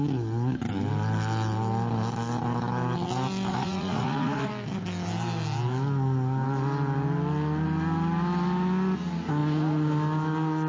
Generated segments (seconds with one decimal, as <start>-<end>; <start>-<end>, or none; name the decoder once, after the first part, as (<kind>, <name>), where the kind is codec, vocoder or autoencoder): 3.5-4.5 (vocoder, Vocos)